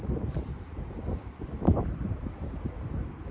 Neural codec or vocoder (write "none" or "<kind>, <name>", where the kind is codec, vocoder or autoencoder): vocoder, BigVGAN v2